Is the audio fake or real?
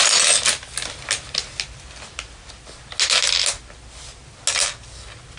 real